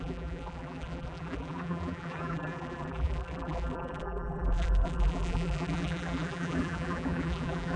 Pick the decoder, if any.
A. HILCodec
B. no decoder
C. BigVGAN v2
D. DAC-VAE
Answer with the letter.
C